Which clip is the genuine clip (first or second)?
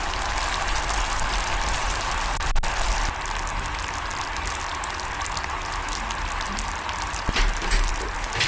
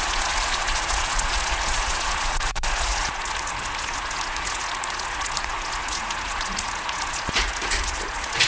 first